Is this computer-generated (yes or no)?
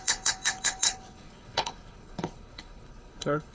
yes